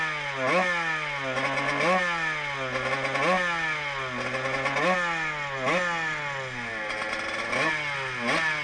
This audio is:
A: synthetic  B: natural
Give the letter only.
B